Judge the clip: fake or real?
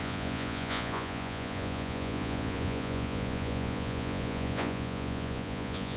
fake